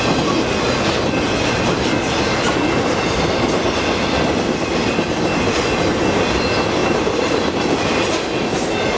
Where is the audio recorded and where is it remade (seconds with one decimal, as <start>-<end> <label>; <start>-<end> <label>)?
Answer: 0.0-6.8 recorded; 6.8-7.4 remade; 7.4-9.0 recorded